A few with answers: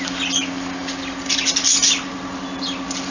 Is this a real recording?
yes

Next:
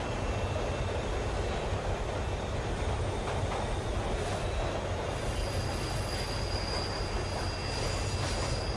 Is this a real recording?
yes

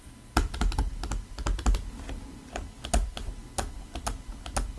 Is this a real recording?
yes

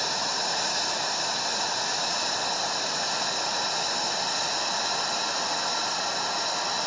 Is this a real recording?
yes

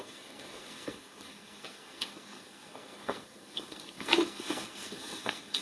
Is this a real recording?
no